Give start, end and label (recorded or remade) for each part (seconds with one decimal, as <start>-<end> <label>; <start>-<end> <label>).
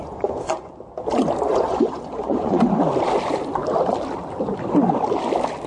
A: 0.0-0.7 remade; 0.7-1.5 recorded; 1.5-2.6 remade; 2.6-5.7 recorded